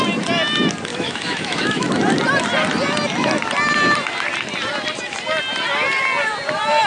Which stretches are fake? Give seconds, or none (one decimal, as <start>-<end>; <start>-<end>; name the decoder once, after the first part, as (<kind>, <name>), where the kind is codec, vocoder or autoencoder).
0.9-1.9 (autoencoder, DAC-VAE)